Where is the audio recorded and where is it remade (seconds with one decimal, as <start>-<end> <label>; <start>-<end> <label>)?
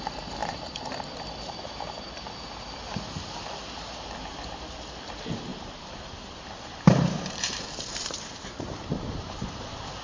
0.0-5.5 recorded; 5.5-10.0 remade